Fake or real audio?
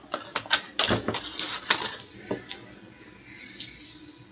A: real